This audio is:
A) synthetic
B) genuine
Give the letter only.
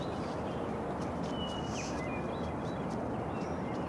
B